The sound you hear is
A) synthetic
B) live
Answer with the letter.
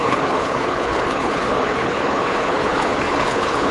A